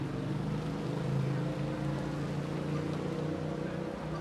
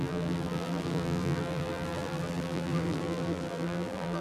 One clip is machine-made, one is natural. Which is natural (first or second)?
first